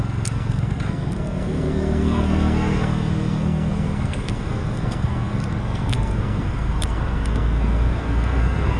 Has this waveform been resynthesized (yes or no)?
yes